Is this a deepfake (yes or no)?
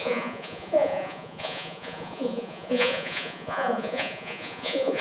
yes